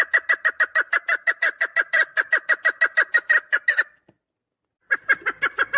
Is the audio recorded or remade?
recorded